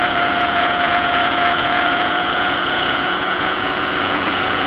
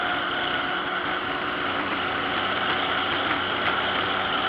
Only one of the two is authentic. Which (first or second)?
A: second